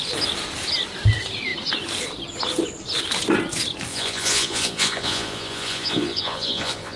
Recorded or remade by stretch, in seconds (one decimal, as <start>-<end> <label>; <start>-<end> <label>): 0.0-3.9 recorded; 3.9-7.0 remade